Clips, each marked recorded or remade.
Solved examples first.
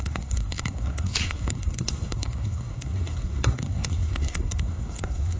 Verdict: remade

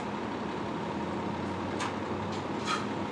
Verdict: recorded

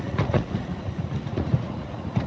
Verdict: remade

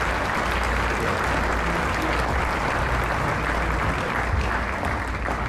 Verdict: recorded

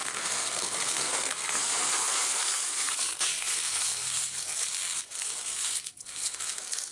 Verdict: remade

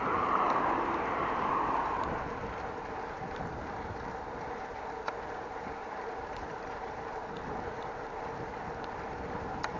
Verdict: remade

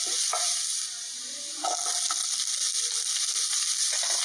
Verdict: recorded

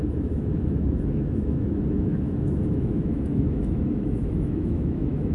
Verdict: remade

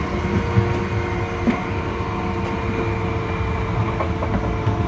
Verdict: recorded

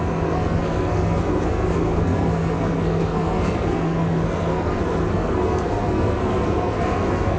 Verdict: remade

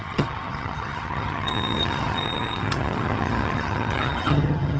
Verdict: remade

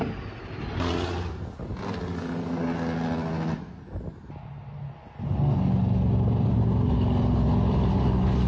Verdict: recorded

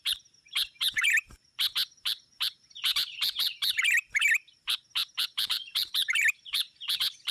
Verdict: remade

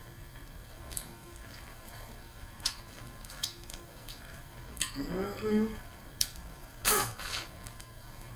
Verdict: remade